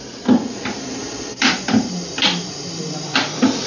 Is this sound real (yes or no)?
no